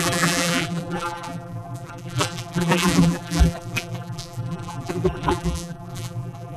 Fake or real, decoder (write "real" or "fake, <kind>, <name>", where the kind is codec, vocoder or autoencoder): fake, vocoder, BigVGAN v2